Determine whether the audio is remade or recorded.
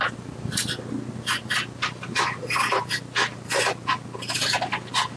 recorded